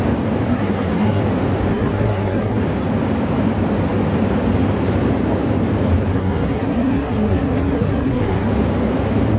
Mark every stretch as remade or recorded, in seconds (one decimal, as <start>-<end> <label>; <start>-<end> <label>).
0.0-0.5 recorded; 0.5-1.2 remade; 1.2-1.7 recorded; 1.7-2.6 remade; 2.6-6.1 recorded; 6.1-8.5 remade; 8.5-9.4 recorded